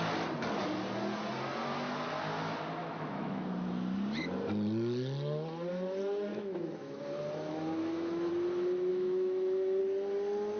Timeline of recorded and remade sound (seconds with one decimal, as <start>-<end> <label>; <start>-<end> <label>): 0.0-2.8 recorded; 2.8-3.4 remade; 3.4-6.3 recorded; 6.3-7.0 remade; 7.0-7.8 recorded; 7.8-8.3 remade; 8.3-8.9 recorded; 8.9-9.8 remade; 9.8-10.6 recorded